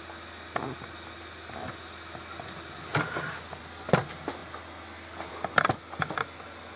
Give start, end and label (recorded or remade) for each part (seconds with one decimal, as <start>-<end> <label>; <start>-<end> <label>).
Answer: 0.0-6.8 recorded